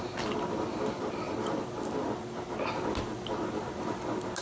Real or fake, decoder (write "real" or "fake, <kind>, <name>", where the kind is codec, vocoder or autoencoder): real